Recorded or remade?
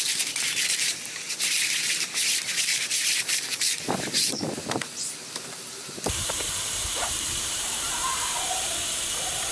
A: remade